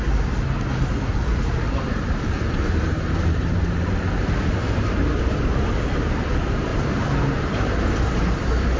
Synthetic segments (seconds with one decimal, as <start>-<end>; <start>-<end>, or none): 1.1-5.6; 6.7-8.2